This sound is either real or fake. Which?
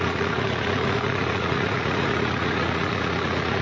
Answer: fake